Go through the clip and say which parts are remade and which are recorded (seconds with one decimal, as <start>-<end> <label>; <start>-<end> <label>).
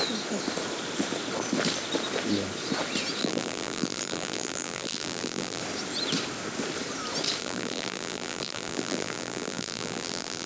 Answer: 0.0-3.2 recorded; 3.2-5.6 remade; 5.6-7.4 recorded; 7.4-10.5 remade